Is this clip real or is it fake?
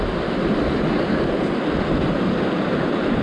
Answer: real